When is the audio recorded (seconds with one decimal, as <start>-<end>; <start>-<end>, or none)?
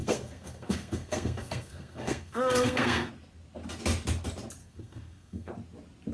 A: 3.1-4.6; 5.5-6.1